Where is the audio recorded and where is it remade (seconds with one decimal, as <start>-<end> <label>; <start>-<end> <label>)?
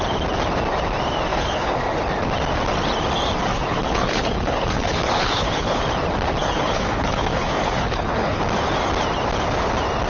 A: 0.0-1.3 recorded; 1.3-1.8 remade; 1.8-3.5 recorded; 3.5-5.8 remade; 5.8-6.4 recorded; 6.4-8.4 remade; 8.4-10.1 recorded